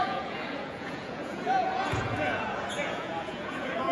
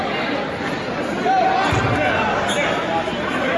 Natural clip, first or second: second